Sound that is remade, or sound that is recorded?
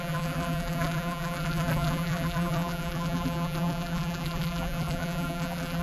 remade